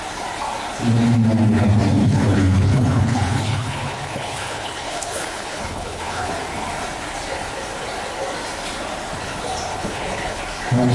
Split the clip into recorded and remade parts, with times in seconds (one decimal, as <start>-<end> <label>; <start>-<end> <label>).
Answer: 0.0-2.0 recorded; 2.0-6.3 remade; 6.3-9.7 recorded; 9.7-10.4 remade; 10.4-10.9 recorded